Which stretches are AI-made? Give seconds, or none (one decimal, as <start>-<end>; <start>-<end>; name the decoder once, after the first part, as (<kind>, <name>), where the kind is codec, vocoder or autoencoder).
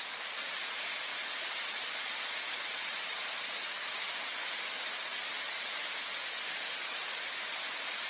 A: none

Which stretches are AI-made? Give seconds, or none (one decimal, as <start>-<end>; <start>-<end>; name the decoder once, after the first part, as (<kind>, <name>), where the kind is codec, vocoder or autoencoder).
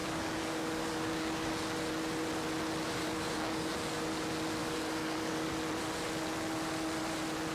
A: 0.0-1.5 (codec, DAC); 3.0-3.7; 4.6-5.5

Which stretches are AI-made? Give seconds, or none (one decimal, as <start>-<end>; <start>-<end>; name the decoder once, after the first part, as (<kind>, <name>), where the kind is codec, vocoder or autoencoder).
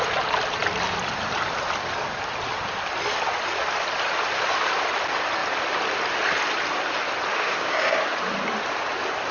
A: 7.3-8.2 (codec, DAC)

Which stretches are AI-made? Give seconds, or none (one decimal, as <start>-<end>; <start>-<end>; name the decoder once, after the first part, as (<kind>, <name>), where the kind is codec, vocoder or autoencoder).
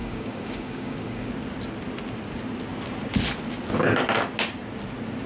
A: 0.0-1.3 (codec, DAC)